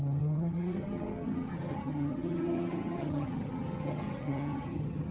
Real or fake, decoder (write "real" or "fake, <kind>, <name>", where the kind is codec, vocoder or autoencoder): fake, vocoder, HiFi-GAN